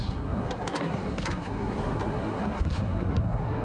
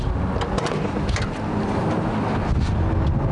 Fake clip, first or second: first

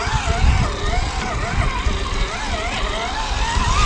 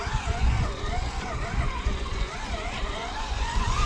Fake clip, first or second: second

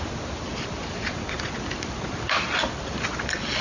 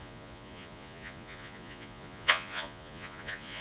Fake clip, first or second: second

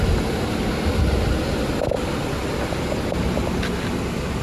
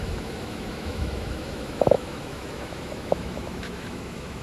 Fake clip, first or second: second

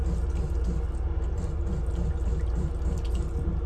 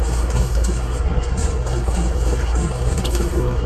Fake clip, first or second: second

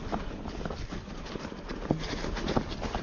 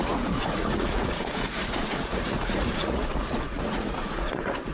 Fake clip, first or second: second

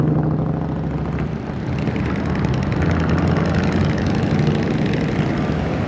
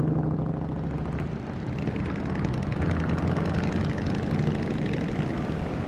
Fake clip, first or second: second